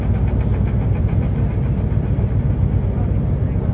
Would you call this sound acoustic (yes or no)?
yes